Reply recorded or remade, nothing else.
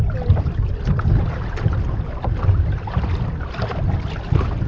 recorded